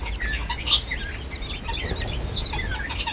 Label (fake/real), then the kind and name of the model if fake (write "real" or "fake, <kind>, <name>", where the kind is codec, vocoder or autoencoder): real